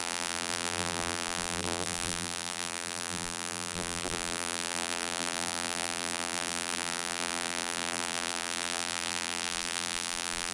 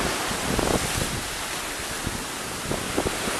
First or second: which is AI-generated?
first